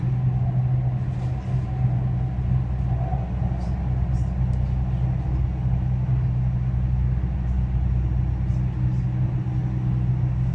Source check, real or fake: real